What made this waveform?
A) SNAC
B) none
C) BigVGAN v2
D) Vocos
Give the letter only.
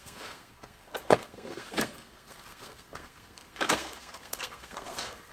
A